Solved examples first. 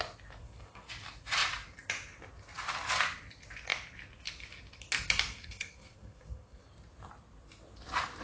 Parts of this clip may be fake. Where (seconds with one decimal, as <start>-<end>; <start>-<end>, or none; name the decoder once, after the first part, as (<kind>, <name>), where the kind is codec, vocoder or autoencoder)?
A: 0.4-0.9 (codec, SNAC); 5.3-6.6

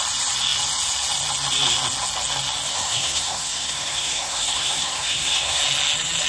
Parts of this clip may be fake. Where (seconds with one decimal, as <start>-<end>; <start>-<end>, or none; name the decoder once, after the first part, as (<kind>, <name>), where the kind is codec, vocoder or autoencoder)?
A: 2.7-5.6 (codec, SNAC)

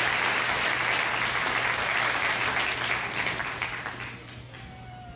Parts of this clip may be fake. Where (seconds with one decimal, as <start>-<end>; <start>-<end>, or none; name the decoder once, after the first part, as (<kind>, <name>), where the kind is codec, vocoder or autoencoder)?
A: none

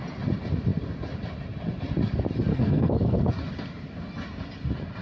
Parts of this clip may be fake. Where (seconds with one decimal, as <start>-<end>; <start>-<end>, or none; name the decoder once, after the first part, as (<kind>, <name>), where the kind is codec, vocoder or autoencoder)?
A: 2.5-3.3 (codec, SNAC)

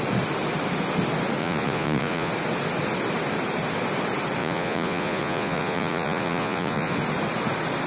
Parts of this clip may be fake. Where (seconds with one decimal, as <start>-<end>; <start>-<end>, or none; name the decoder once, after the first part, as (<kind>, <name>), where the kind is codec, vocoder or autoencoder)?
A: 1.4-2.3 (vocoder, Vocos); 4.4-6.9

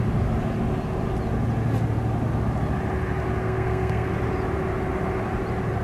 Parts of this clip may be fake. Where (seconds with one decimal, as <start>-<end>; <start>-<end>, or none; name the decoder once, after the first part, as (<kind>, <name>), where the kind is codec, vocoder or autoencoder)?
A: 3.4-4.1 (codec, SNAC)